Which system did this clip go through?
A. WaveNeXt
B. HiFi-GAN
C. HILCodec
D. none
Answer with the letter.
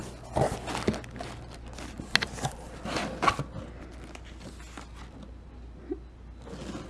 D